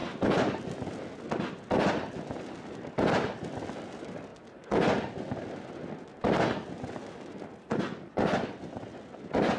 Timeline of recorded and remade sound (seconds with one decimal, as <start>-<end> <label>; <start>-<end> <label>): 0.0-9.6 recorded